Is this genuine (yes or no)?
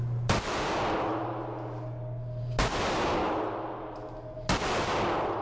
yes